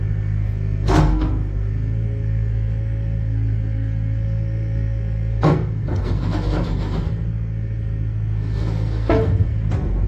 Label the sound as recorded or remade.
remade